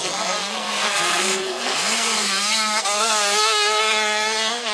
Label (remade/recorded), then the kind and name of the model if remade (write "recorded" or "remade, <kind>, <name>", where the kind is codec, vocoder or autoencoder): remade, codec, SNAC